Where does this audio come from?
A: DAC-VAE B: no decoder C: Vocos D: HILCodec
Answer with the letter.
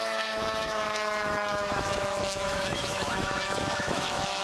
A